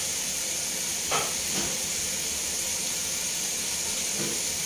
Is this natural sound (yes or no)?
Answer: yes